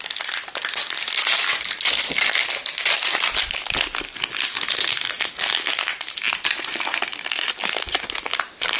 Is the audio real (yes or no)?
yes